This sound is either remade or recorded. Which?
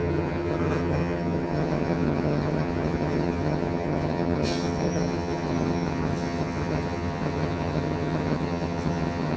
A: remade